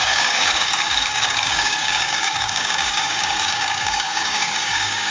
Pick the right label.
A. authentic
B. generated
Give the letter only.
B